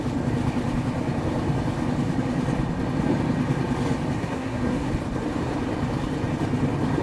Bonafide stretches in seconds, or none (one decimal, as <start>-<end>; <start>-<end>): 0.0-4.2; 4.9-7.0